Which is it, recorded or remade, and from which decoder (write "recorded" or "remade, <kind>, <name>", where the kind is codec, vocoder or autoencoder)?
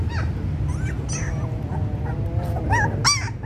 recorded